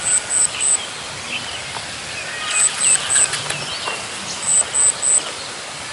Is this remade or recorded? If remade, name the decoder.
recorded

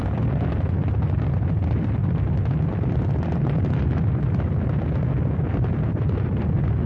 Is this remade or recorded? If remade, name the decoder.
recorded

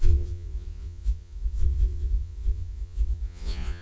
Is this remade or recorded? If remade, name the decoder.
remade, vocoder, Vocos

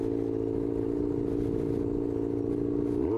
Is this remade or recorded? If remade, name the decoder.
recorded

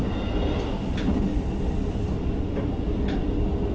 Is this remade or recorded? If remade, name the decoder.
recorded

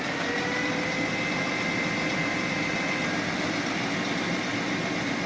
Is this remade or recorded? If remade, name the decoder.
recorded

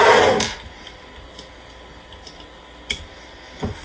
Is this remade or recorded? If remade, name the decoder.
recorded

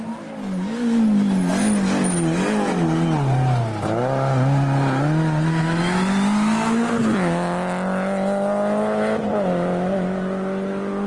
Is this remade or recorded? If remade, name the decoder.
recorded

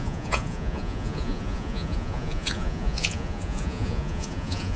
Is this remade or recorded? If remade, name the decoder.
remade, vocoder, Vocos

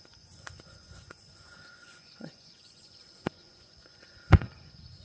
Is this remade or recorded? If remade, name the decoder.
remade, vocoder, Vocos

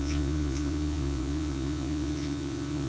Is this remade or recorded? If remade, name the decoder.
remade, vocoder, Vocos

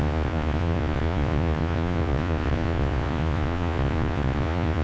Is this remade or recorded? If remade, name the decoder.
remade, vocoder, Vocos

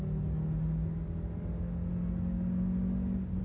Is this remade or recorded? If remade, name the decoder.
recorded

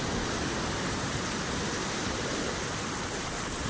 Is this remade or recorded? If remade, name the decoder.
recorded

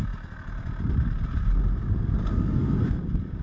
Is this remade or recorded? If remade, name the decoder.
recorded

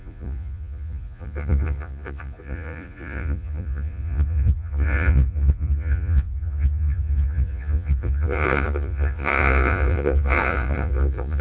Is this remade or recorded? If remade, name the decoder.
remade, vocoder, Vocos